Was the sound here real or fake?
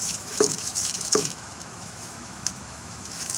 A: fake